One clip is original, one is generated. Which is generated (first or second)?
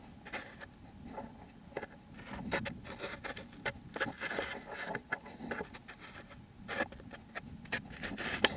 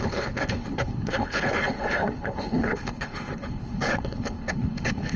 second